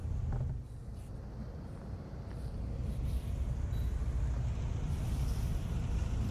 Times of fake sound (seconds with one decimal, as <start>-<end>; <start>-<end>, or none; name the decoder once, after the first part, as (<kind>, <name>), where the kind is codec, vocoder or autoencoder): none